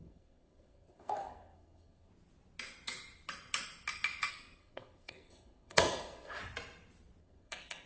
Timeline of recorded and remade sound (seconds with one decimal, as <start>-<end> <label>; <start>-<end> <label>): 0.0-2.1 remade; 2.1-4.3 recorded; 4.3-6.4 remade; 6.4-7.2 recorded; 7.2-7.9 remade